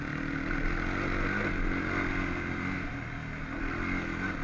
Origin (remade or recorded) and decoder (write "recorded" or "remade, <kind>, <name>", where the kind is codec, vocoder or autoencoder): recorded